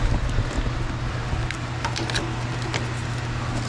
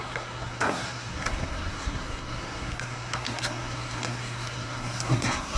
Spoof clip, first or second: second